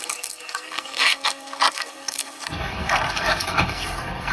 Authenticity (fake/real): fake